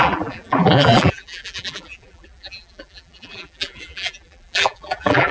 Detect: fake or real fake